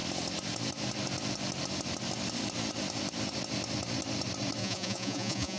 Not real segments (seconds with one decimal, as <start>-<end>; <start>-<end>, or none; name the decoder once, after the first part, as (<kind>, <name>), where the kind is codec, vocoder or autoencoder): 4.6-5.6 (vocoder, Vocos)